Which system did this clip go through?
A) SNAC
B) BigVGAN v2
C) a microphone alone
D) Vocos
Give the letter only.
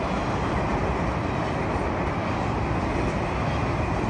C